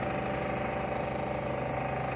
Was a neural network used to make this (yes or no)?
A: no